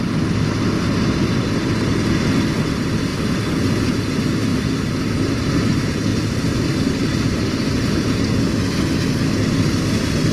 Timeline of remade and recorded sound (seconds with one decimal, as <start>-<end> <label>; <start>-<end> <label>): 0.0-3.1 recorded; 3.1-4.1 remade; 4.1-4.5 recorded; 4.5-5.4 remade; 5.4-6.1 recorded; 6.1-8.1 remade; 8.1-10.3 recorded